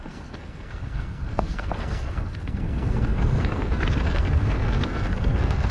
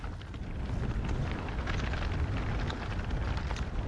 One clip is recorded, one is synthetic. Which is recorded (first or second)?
second